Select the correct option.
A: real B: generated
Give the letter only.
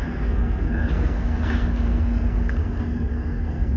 B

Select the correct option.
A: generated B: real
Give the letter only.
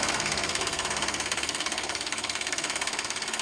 A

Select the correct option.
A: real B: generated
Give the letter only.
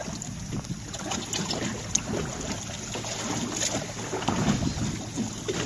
A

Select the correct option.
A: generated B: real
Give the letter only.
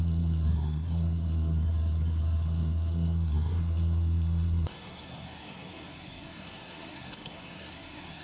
A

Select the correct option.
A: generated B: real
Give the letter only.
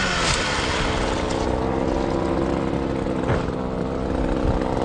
B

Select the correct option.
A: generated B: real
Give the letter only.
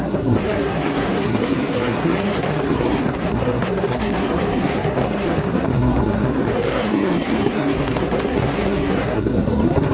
A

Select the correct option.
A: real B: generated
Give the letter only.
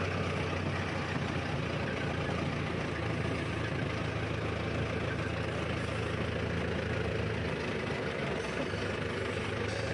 A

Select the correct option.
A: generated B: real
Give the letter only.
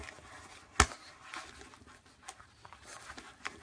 B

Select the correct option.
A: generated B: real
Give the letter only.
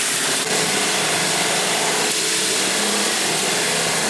B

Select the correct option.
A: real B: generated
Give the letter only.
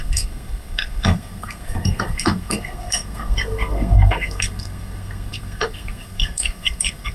B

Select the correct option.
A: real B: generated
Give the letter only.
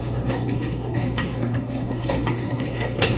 B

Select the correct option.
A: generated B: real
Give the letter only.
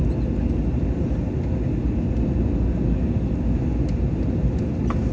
B